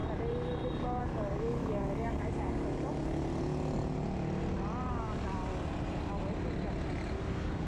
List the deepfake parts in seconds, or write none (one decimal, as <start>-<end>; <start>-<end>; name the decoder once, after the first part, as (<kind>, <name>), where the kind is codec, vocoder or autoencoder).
1.0-3.3 (codec, DAC); 4.9-5.4; 7.2-7.7